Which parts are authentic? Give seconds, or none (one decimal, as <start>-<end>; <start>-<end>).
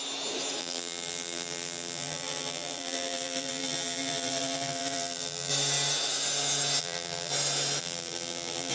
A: 0.0-0.6; 5.5-6.8; 7.3-7.8